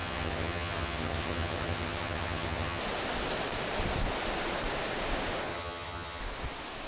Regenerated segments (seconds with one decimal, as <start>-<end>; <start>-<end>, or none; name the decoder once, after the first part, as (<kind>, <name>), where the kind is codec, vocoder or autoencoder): 0.0-2.8 (vocoder, HiFi-GAN); 5.5-6.2